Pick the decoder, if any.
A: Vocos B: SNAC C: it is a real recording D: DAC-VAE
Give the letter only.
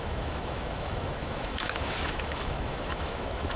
D